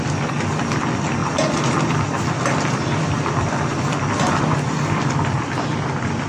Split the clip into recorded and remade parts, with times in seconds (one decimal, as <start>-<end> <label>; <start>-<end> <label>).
0.0-1.2 recorded; 1.2-4.4 remade; 4.4-6.3 recorded